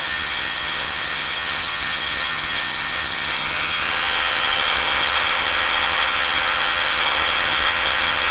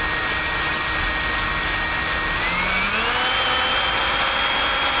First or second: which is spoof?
first